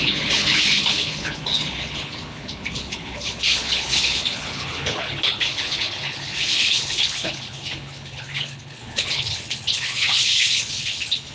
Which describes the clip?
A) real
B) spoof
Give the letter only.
B